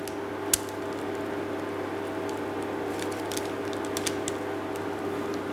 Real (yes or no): yes